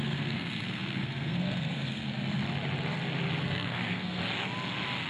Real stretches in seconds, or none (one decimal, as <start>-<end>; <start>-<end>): 2.4-3.4; 4.2-5.1